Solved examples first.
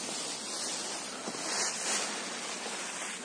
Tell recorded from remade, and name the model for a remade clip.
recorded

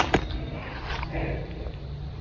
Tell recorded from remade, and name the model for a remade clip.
recorded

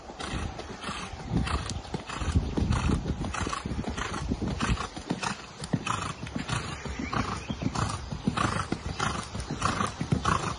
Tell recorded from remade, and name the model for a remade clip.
recorded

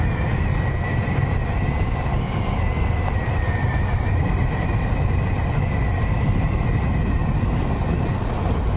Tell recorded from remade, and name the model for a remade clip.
recorded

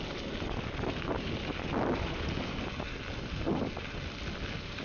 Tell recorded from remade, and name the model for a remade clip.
recorded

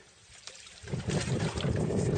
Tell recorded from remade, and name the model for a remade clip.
remade, vocoder, BigVGAN v2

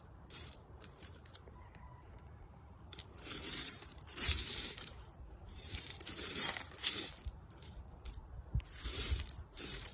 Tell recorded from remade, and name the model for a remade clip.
remade, vocoder, BigVGAN v2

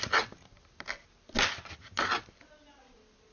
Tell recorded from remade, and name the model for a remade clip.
recorded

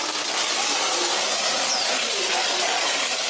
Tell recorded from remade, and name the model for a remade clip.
recorded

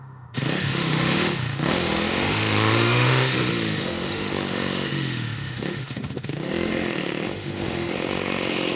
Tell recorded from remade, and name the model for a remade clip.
remade, autoencoder, DAC-VAE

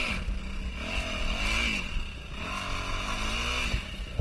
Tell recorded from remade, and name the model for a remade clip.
recorded